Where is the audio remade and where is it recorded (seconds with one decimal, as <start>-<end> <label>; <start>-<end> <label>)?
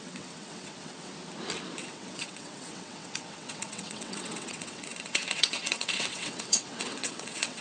0.0-1.1 remade; 1.1-1.8 recorded; 1.8-7.6 remade